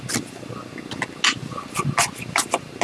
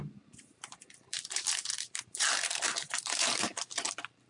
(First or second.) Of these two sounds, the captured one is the first